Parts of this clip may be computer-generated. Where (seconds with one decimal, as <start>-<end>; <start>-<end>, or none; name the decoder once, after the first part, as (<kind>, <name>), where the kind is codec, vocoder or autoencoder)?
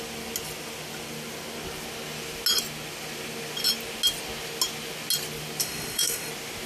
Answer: 5.6-6.3 (autoencoder, DAC-VAE)